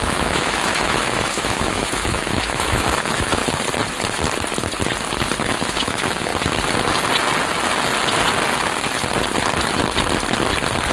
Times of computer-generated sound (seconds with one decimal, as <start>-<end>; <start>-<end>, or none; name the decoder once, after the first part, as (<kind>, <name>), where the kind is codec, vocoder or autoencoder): 0.0-3.4 (autoencoder, DAC-VAE); 5.4-6.3